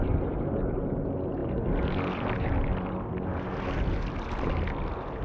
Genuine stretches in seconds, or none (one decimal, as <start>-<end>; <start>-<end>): 0.0-5.2